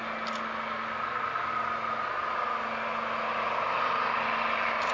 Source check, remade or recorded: recorded